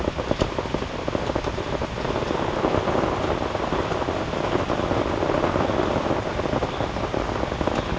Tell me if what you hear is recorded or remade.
recorded